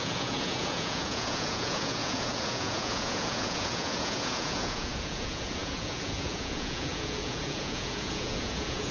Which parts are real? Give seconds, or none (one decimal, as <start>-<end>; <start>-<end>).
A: none